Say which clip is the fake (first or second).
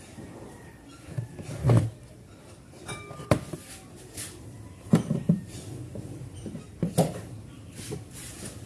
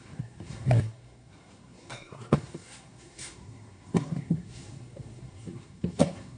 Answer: second